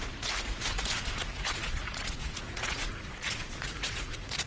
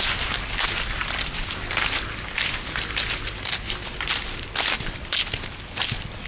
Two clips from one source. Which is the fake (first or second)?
first